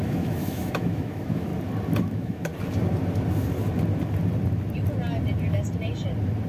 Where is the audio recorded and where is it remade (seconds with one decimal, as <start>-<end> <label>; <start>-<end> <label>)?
0.0-1.5 remade; 1.5-2.0 recorded; 2.0-2.5 remade; 2.5-6.5 recorded